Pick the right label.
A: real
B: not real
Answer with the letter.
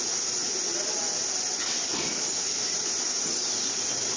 A